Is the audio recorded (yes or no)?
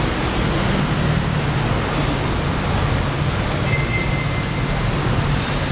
yes